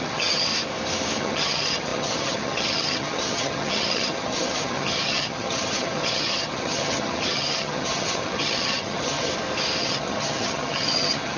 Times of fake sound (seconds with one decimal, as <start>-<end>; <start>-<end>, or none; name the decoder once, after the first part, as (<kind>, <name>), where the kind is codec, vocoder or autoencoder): 0.0-0.5 (vocoder, HiFi-GAN); 1.2-9.3; 9.8-11.4